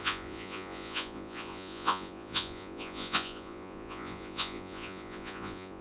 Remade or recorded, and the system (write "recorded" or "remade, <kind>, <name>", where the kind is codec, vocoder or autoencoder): remade, vocoder, Vocos